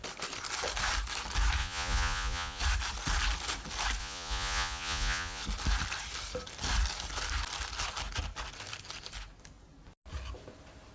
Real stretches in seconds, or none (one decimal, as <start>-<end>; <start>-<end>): 0.0-1.6; 2.6-4.0; 5.4-10.9